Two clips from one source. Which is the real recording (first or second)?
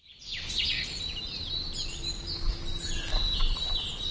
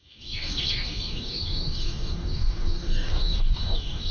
first